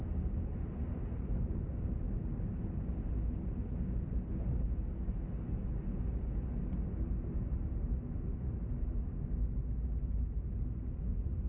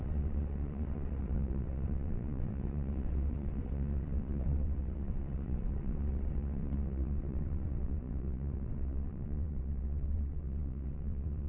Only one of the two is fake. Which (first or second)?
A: second